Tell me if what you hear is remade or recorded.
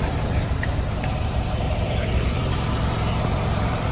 remade